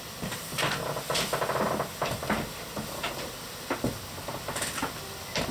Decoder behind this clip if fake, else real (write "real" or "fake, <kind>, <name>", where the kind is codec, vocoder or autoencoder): real